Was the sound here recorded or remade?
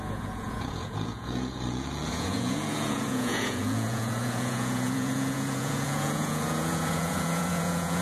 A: remade